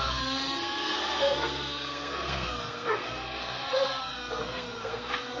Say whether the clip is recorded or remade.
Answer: remade